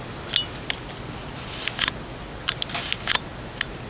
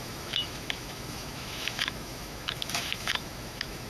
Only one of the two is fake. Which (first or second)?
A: second